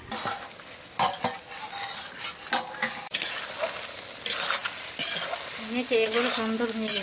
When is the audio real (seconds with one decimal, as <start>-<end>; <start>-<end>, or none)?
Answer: 0.0-7.0